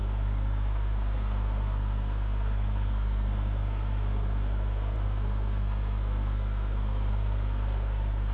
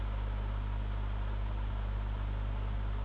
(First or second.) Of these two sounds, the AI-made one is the first